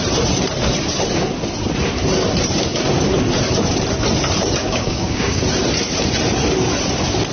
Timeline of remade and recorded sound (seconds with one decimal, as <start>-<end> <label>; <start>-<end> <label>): 0.0-4.6 recorded; 4.6-5.4 remade; 5.4-7.3 recorded